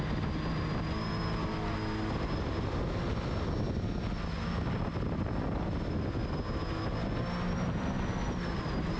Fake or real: real